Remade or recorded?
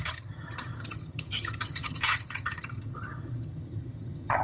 remade